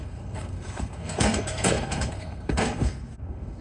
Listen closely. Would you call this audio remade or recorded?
remade